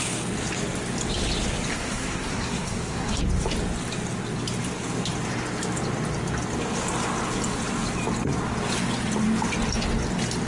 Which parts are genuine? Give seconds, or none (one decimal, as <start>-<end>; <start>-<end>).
0.0-1.7; 3.2-10.5